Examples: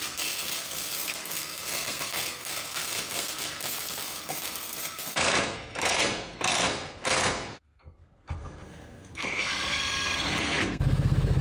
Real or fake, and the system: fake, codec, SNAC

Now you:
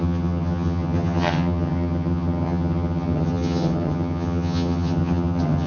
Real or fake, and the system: fake, vocoder, HiFi-GAN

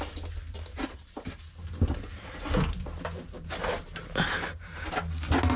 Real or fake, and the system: real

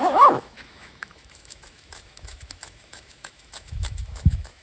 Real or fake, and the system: fake, autoencoder, DAC-VAE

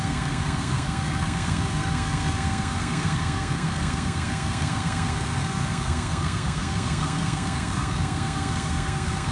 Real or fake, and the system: fake, codec, SNAC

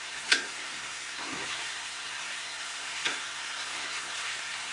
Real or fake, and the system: fake, codec, SNAC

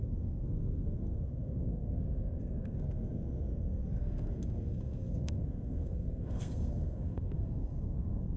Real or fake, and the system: fake, codec, SNAC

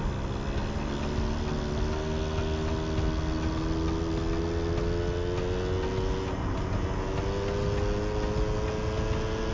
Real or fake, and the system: real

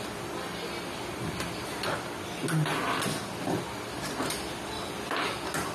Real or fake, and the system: real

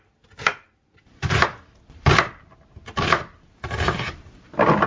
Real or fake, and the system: real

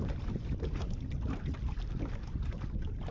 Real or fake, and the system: real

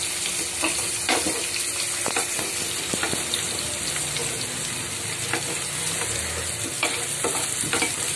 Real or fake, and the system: real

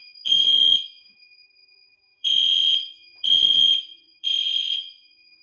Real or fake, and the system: fake, vocoder, Vocos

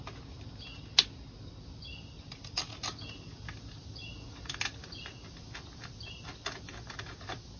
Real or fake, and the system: real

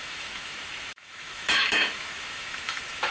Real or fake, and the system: fake, autoencoder, DAC-VAE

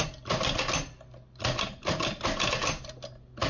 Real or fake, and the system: real